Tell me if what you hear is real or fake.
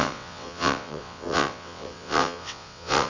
fake